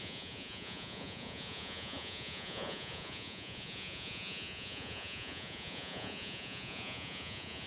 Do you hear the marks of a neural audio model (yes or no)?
yes